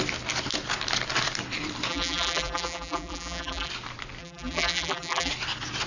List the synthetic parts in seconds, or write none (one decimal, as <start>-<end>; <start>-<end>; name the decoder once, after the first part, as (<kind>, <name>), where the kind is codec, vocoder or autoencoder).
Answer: 1.9-3.7 (vocoder, BigVGAN v2); 4.2-5.3